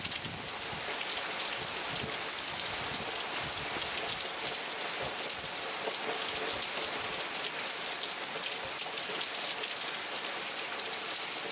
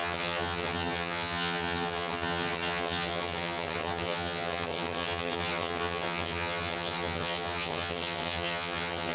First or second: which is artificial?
second